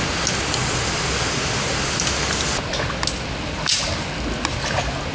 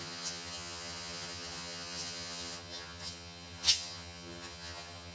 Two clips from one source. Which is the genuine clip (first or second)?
first